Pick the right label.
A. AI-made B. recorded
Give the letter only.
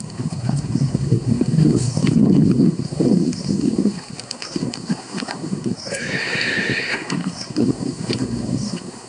A